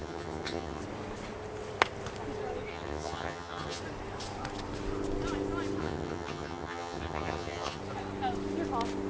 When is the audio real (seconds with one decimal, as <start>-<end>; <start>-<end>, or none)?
0.8-2.7; 3.8-5.8; 7.8-9.1